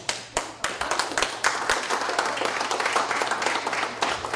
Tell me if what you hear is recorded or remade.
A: recorded